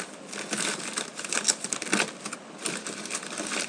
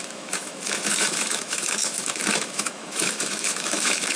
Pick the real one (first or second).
first